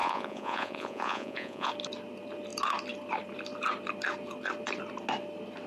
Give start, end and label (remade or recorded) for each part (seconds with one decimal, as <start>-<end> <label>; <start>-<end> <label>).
0.0-1.7 remade; 1.7-5.7 recorded